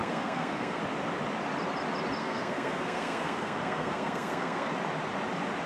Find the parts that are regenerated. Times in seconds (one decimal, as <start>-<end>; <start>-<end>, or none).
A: 0.0-0.8; 2.2-4.7